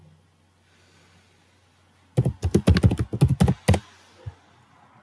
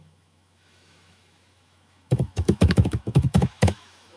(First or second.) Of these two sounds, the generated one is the second